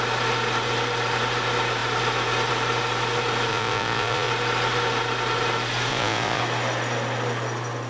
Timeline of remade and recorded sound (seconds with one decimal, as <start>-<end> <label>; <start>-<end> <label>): 0.0-3.5 recorded; 3.5-4.3 remade; 4.3-5.9 recorded; 5.9-6.4 remade; 6.4-7.9 recorded